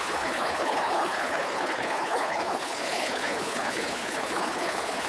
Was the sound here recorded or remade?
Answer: remade